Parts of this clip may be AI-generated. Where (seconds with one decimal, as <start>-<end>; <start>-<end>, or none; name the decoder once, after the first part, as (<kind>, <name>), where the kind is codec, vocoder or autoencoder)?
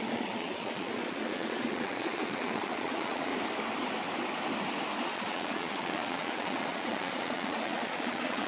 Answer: 0.0-3.3 (vocoder, Vocos); 5.0-8.5